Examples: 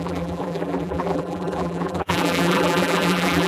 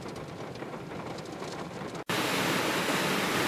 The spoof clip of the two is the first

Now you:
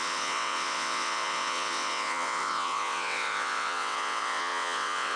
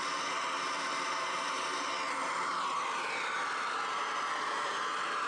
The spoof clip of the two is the first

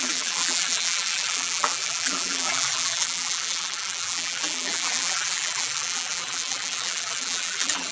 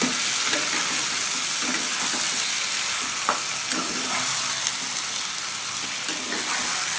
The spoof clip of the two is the first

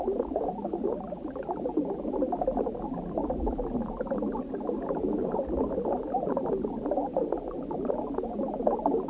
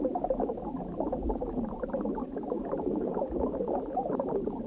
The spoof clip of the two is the second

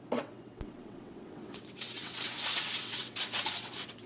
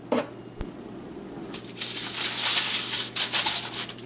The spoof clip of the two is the first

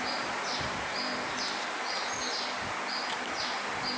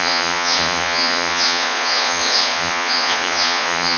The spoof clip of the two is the second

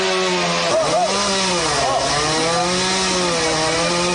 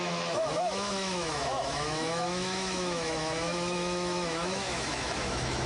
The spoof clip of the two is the second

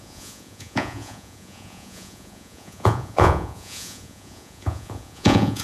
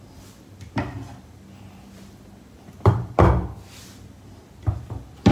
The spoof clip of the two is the first